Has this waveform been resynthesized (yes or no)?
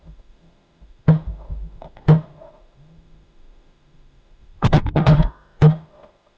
yes